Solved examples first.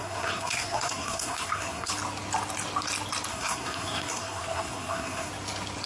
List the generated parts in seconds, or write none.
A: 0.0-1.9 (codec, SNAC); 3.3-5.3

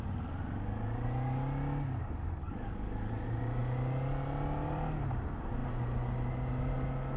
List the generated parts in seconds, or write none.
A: 2.0-3.1 (codec, DAC)

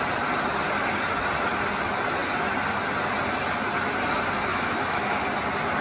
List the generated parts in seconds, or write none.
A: 4.5-5.2 (autoencoder, DAC-VAE)